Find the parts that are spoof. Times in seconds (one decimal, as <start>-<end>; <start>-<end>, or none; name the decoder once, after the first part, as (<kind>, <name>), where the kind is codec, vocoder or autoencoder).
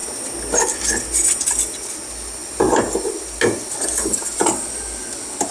none